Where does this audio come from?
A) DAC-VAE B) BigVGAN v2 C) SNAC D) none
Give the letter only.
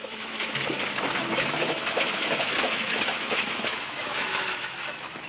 A